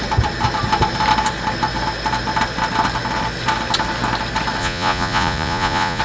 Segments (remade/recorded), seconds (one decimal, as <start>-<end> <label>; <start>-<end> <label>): 0.0-4.6 recorded; 4.6-6.0 remade